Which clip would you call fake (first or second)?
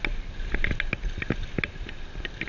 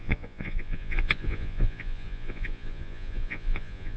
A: second